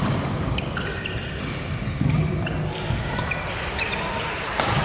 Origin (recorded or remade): recorded